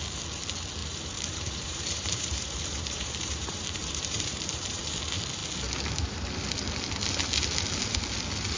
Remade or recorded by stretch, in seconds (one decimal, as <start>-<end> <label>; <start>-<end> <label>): 0.0-0.8 recorded; 0.8-4.8 remade; 4.8-8.6 recorded